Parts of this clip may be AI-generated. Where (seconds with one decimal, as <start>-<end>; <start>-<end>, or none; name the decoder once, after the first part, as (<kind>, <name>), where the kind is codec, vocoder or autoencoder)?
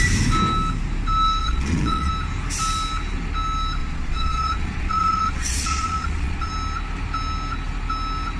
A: 1.4-2.1 (vocoder, Vocos); 3.8-6.5